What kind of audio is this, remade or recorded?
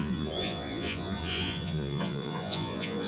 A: remade